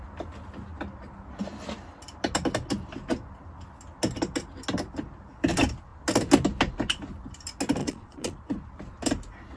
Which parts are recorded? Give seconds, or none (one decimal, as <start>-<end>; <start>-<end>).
0.0-7.8; 8.4-9.6